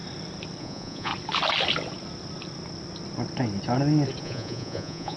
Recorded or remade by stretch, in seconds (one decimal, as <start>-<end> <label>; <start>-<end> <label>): 0.0-0.6 recorded; 0.6-1.1 remade; 1.1-4.2 recorded; 4.2-5.2 remade